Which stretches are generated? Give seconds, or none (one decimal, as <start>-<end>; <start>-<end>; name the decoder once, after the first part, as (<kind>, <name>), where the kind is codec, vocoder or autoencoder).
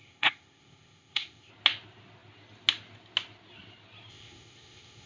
0.0-1.5 (codec, ZipCodec); 4.1-5.1